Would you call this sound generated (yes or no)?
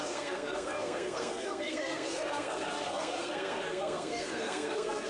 yes